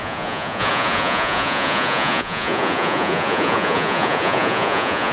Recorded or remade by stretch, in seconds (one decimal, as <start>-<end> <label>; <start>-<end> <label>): 0.0-5.1 remade